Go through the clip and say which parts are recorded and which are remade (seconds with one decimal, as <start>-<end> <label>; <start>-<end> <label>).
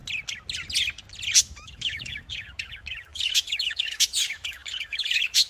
0.0-1.4 recorded; 1.4-5.5 remade